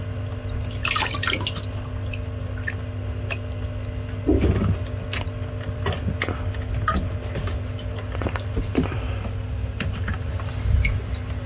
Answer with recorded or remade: recorded